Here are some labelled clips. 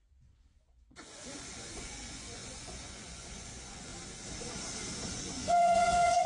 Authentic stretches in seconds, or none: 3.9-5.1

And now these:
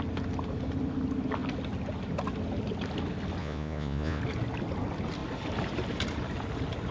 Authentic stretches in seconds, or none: 0.0-3.4; 4.2-6.9

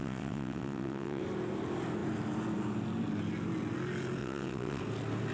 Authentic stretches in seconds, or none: 1.2-4.2; 4.8-5.3

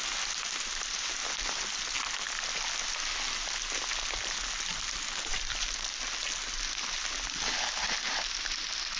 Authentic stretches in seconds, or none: 0.0-9.0

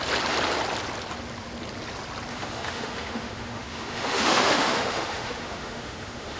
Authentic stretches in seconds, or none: 0.0-2.3